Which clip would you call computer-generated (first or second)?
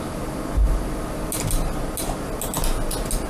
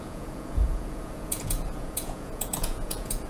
second